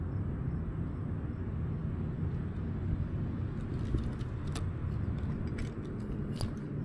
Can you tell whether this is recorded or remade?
recorded